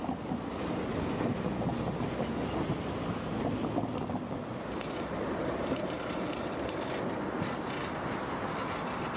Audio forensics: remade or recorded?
recorded